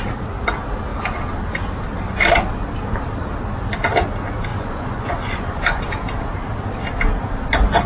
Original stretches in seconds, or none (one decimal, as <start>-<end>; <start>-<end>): 0.0-4.5; 5.8-7.9